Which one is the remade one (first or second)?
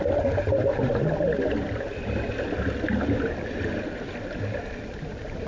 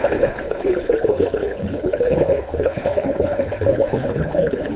second